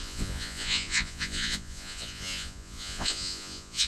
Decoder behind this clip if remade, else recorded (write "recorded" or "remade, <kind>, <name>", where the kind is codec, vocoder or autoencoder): remade, vocoder, Vocos